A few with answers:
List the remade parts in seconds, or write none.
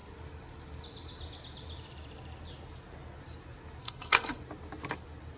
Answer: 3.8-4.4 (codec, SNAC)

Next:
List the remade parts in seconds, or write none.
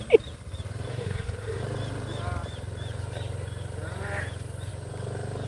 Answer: 0.9-1.6 (codec, SNAC)